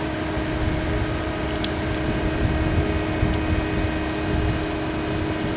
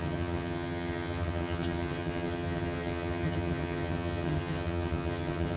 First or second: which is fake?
second